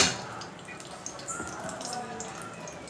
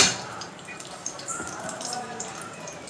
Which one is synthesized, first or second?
second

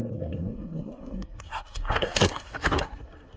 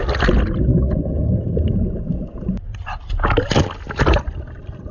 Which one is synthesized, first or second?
first